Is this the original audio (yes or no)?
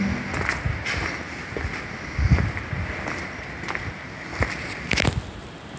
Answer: yes